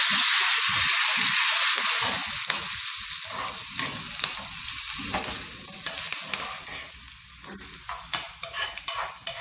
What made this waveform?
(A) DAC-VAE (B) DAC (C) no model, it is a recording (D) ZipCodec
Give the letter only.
C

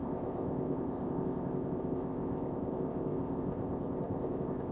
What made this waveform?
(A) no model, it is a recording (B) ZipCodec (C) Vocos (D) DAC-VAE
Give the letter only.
B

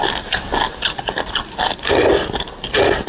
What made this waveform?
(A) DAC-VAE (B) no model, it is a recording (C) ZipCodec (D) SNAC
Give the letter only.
B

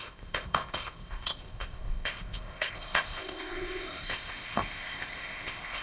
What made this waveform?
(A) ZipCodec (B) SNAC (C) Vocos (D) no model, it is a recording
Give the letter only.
A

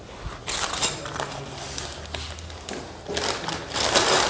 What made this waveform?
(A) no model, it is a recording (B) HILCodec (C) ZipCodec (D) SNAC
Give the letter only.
A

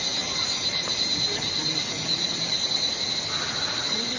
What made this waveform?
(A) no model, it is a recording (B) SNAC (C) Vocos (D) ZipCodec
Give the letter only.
A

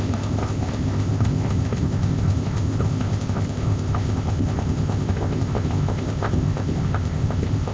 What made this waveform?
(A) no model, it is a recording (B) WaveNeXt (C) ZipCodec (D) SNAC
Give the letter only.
C